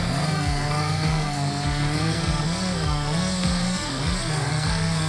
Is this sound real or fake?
fake